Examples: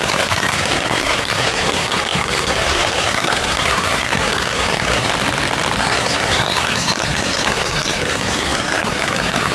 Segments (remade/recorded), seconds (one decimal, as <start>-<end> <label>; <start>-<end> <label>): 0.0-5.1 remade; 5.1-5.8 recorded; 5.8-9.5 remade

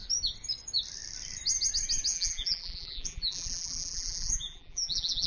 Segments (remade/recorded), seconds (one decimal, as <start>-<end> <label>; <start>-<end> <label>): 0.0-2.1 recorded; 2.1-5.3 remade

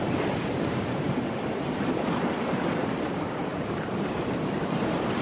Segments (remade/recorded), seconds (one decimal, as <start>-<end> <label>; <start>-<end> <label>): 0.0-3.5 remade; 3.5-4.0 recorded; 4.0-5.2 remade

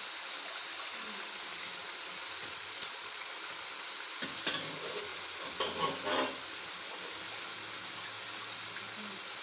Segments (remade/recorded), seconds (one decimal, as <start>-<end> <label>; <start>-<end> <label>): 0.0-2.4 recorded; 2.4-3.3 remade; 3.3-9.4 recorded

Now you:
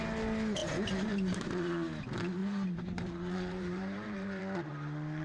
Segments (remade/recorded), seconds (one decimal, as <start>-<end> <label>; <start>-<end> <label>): 0.0-0.6 recorded; 0.6-1.4 remade; 1.4-2.4 recorded; 2.4-4.4 remade; 4.4-5.2 recorded